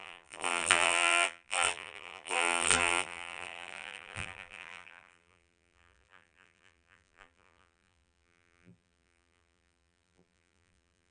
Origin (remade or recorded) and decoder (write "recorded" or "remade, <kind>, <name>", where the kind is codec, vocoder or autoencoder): remade, vocoder, BigVGAN v2